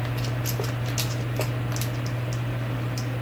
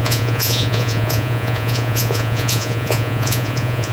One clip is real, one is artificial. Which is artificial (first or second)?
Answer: second